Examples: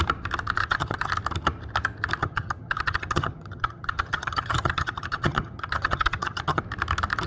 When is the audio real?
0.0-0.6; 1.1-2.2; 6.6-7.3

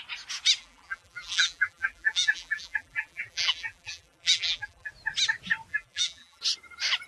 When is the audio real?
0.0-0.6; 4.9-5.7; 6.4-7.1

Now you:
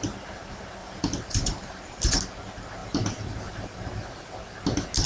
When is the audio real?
0.0-0.8; 2.1-2.8; 4.3-5.1